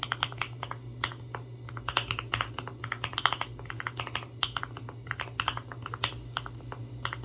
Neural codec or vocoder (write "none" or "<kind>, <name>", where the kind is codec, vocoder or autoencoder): none